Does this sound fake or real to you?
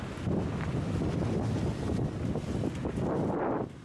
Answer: real